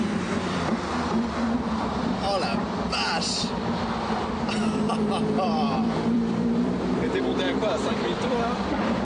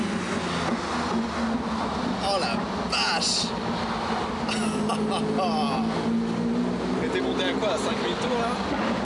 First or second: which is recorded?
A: second